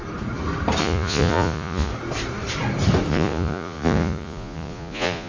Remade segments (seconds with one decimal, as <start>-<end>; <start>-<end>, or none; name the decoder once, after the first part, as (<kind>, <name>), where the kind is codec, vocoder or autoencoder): 0.8-1.9 (vocoder, Vocos); 3.1-5.3